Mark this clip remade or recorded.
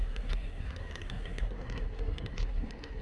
remade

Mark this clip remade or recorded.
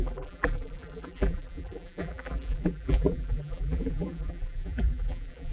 remade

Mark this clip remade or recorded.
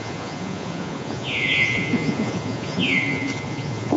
remade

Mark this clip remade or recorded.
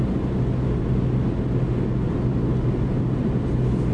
recorded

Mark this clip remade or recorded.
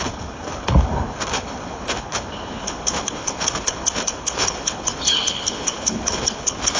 remade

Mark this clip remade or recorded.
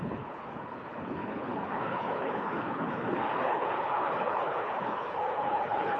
remade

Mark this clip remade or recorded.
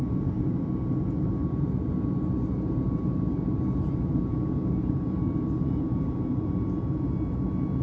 recorded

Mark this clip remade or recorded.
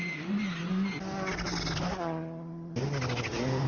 recorded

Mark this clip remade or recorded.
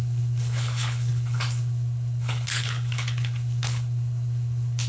remade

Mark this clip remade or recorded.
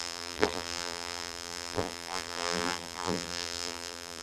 remade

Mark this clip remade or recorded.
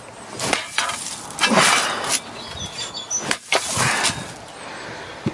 recorded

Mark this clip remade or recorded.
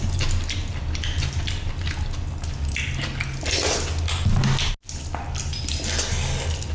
recorded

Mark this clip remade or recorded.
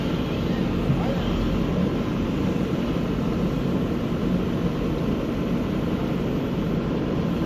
recorded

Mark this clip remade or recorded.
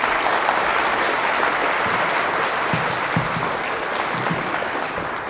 recorded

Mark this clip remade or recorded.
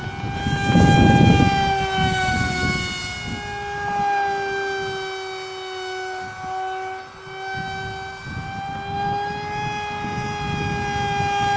recorded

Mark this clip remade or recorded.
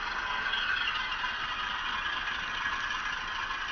recorded